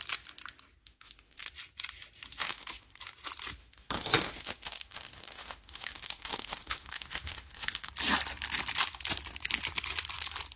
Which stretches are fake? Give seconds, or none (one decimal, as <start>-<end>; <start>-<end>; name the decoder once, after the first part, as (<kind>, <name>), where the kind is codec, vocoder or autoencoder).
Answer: 0.8-1.5 (autoencoder, DAC-VAE); 2.4-3.0; 3.6-7.9